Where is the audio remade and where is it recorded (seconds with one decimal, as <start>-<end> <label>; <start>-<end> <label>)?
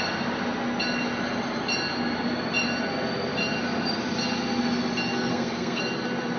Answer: 0.0-5.3 recorded; 5.3-5.8 remade; 5.8-6.4 recorded